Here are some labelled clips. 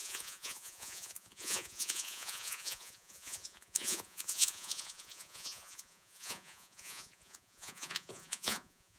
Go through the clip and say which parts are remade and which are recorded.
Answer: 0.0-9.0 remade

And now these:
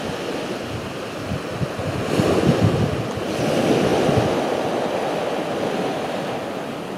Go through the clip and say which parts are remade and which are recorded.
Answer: 0.0-7.0 recorded

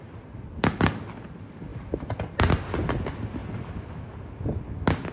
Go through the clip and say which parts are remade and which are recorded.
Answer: 0.0-5.1 recorded

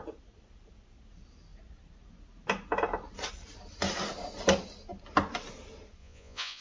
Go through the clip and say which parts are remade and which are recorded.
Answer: 0.0-6.0 recorded; 6.0-6.6 remade

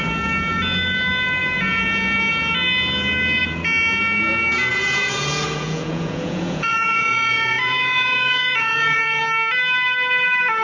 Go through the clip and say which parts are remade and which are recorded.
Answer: 0.0-4.7 recorded; 4.7-9.2 remade; 9.2-10.6 recorded